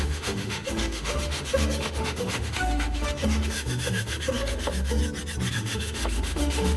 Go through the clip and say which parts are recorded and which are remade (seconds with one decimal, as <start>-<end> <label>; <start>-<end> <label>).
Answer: 0.0-5.0 remade; 5.0-5.5 recorded; 5.5-6.8 remade